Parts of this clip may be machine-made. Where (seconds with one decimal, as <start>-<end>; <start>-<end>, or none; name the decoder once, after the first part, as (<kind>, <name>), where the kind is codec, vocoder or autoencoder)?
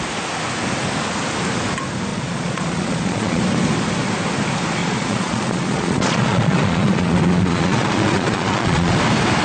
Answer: 2.1-3.4 (vocoder, Vocos); 4.8-9.0